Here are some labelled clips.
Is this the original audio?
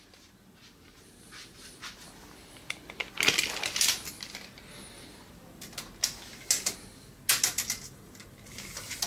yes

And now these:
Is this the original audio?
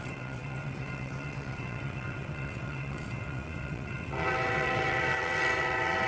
no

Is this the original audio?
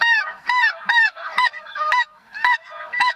no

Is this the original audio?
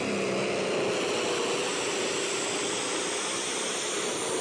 yes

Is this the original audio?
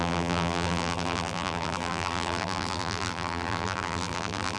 no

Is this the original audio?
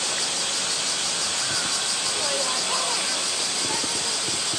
yes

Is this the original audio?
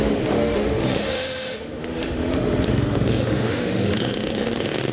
no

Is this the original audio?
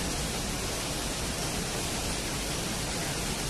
yes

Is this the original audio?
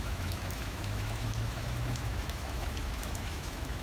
no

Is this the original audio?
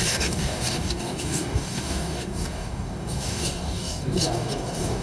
no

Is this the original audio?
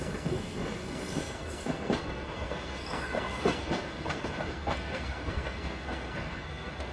no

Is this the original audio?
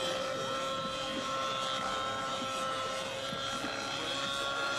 yes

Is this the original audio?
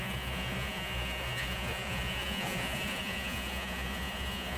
no